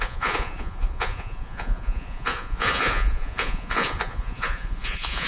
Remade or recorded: remade